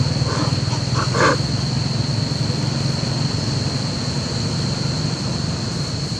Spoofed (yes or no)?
no